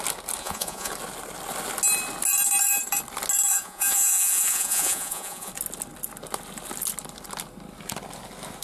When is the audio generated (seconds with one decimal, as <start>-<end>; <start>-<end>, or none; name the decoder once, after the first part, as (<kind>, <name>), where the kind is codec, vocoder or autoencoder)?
0.4-0.9 (vocoder, Vocos); 3.5-5.5

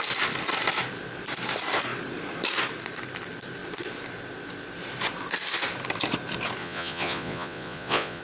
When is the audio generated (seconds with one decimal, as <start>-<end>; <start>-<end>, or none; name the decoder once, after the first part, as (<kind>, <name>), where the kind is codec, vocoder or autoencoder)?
6.6-8.2 (vocoder, Vocos)

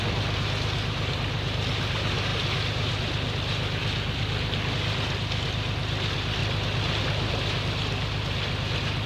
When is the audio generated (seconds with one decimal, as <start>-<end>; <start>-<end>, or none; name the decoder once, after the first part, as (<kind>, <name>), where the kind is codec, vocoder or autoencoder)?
none

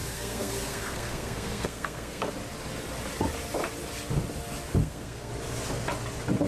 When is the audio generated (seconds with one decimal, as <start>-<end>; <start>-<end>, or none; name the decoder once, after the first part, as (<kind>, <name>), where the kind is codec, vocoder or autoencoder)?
0.0-2.3 (codec, SNAC); 4.8-5.3

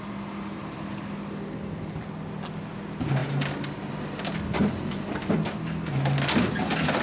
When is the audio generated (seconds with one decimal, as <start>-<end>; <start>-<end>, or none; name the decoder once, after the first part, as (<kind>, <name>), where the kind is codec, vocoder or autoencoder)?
none

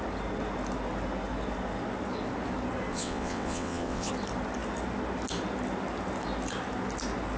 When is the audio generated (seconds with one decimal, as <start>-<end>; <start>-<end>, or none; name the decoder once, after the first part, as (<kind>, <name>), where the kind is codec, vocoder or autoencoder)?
2.9-4.1 (vocoder, WaveNeXt)